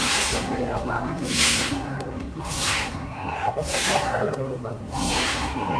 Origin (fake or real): fake